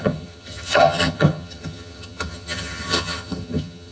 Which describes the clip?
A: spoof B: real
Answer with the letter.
A